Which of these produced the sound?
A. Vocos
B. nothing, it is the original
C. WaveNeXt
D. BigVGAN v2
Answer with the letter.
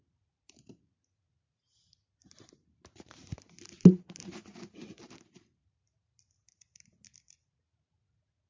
D